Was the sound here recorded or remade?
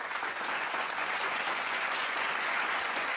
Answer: remade